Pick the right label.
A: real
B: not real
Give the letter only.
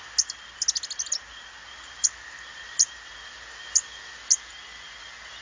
A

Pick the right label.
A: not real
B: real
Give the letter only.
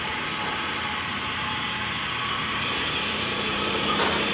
A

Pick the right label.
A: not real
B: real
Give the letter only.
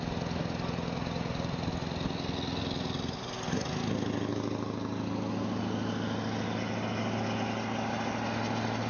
B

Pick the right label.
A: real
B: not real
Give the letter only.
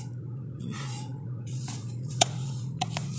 B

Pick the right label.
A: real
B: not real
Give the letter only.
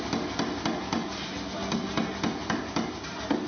A